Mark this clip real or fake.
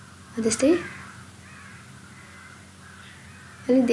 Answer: real